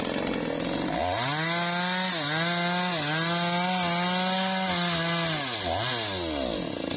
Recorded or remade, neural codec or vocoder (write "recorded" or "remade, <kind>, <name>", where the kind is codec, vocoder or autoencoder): recorded